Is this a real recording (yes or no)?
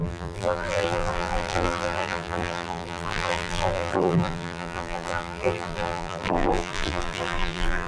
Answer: no